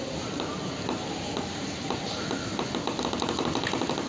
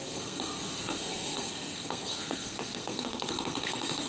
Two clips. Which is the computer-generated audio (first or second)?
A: second